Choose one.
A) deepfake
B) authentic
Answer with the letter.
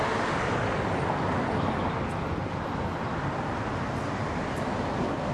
B